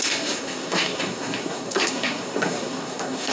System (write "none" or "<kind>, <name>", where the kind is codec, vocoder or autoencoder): codec, SNAC